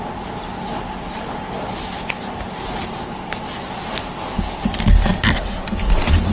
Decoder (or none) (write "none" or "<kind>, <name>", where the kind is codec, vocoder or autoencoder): none